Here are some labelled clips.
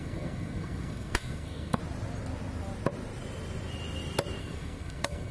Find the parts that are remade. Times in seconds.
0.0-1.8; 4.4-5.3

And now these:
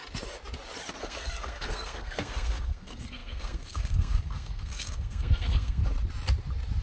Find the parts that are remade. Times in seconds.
1.0-5.8

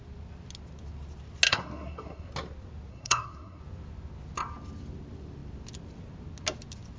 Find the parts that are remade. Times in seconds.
1.5-2.3; 2.9-3.6

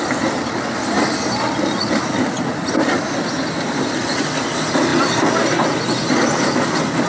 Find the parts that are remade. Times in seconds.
none

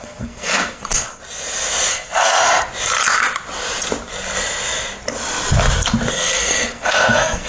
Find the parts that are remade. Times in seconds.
0.0-1.2; 1.9-2.4; 6.1-7.5